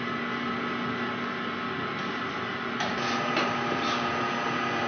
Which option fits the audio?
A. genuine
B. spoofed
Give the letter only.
A